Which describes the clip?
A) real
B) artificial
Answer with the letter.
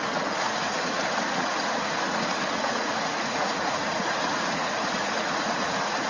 B